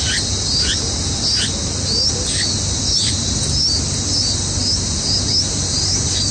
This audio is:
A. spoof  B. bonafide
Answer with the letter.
B